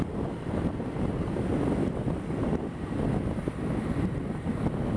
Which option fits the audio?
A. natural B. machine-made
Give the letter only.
A